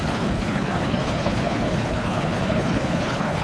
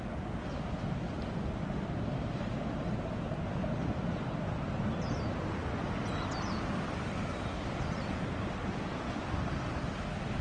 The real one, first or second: second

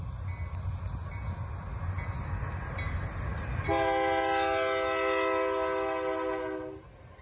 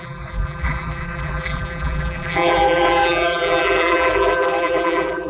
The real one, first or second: first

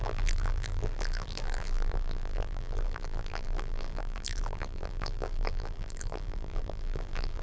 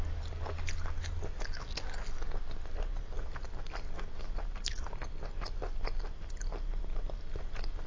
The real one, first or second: second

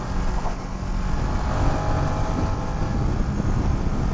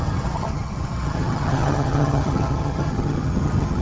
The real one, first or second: first